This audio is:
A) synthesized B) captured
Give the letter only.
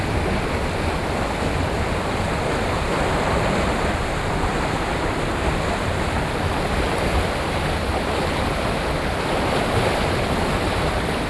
B